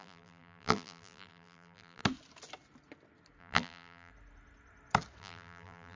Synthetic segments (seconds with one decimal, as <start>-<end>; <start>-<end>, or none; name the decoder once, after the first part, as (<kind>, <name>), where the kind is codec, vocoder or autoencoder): 0.0-2.0 (vocoder, BigVGAN v2); 3.4-4.1; 5.2-6.0